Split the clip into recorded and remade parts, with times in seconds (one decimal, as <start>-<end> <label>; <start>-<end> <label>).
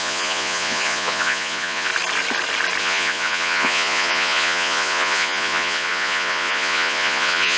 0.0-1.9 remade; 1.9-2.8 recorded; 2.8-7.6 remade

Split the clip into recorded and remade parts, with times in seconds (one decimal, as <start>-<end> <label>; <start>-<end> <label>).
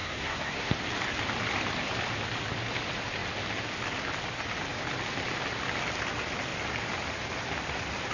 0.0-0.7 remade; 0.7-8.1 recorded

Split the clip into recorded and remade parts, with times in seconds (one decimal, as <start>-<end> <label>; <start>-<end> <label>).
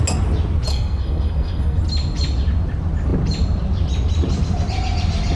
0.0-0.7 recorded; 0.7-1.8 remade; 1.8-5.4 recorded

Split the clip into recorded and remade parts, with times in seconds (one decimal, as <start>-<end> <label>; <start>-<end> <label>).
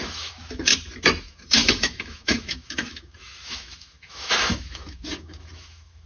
0.0-0.7 remade; 0.7-1.2 recorded; 1.2-6.1 remade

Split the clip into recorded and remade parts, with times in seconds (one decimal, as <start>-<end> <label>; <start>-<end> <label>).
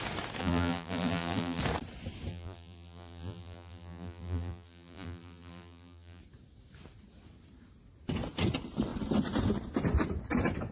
0.0-0.4 recorded; 0.4-1.6 remade; 1.6-2.3 recorded; 2.3-6.2 remade; 6.2-10.7 recorded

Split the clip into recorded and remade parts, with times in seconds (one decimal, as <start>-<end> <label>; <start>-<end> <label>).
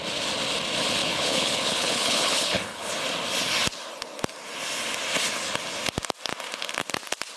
0.0-1.0 recorded; 1.0-2.9 remade; 2.9-7.4 recorded